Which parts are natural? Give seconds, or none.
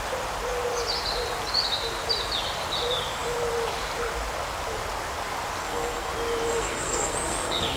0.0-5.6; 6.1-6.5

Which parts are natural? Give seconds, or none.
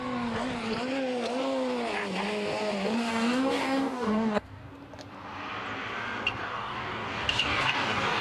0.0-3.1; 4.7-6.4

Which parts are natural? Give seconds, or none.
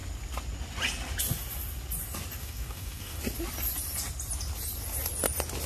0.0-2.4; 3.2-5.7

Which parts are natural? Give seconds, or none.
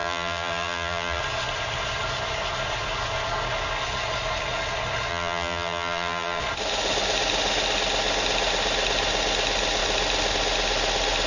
1.2-5.1; 6.4-11.3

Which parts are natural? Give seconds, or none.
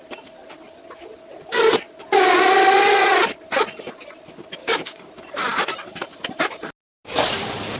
0.0-4.6; 5.1-7.8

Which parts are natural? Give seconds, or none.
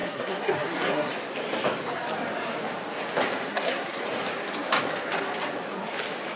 1.1-3.5; 4.0-6.4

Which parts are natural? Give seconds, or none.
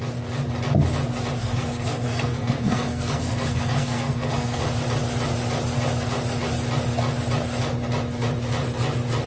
0.0-1.4; 4.6-9.3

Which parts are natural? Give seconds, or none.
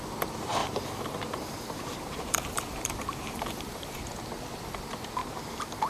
0.0-0.6; 4.1-5.2